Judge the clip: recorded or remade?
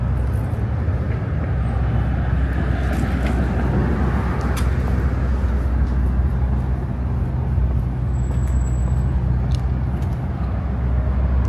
recorded